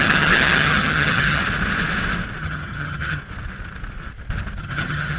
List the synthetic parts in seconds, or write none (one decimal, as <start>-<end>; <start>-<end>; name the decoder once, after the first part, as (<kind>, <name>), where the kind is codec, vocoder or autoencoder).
0.0-1.4 (vocoder, HiFi-GAN); 2.4-3.2; 4.6-5.2